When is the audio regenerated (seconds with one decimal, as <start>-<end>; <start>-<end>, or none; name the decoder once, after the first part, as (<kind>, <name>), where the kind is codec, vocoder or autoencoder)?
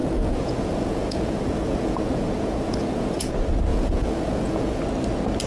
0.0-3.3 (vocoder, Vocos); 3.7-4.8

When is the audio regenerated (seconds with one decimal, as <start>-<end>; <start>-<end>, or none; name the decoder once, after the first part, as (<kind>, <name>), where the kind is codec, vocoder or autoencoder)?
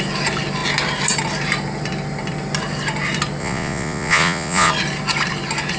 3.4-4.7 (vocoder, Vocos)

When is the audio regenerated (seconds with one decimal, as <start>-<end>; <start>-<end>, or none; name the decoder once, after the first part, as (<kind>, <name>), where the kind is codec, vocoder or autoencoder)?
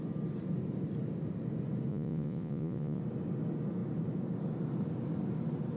1.9-3.0 (vocoder, Vocos)